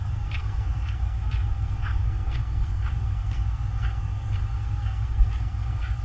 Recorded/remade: remade